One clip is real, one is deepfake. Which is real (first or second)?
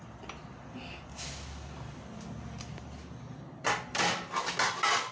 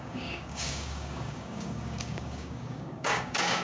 first